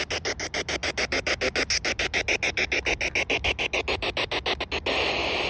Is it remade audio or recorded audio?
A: recorded